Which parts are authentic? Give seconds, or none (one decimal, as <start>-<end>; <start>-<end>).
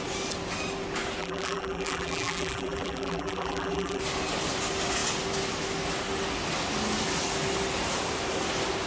0.0-1.2; 4.0-8.9